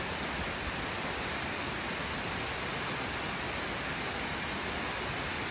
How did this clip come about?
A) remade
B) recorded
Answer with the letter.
B